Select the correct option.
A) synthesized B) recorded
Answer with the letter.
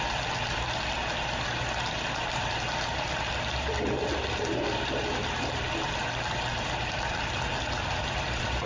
B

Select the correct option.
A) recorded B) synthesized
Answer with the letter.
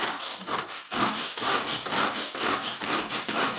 B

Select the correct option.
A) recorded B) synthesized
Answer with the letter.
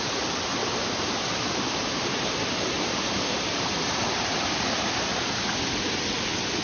A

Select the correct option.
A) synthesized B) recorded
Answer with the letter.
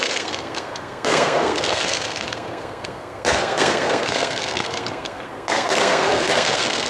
A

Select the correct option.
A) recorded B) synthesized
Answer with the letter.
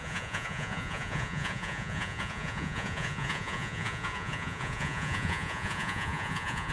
B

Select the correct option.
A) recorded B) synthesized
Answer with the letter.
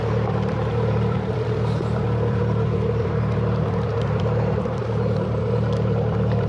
B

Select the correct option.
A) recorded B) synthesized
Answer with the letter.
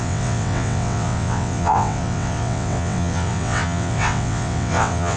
B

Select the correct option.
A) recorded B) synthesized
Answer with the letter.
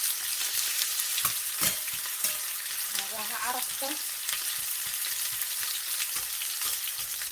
B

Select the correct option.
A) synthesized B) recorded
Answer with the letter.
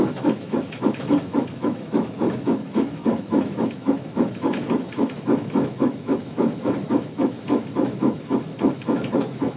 A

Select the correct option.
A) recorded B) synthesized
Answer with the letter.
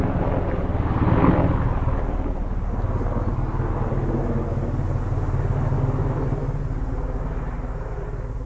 A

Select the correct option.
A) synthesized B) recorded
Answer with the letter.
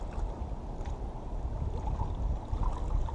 B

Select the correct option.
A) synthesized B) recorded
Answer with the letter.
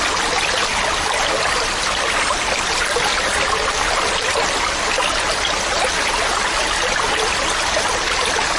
B